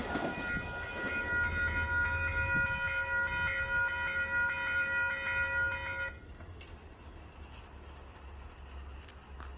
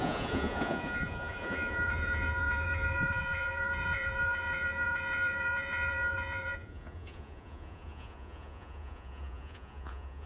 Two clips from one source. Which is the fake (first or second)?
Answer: second